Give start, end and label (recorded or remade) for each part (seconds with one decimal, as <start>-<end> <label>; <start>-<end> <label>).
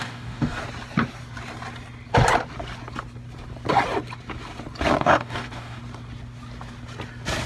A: 0.0-0.6 remade; 0.6-5.0 recorded; 5.0-5.8 remade; 5.8-7.5 recorded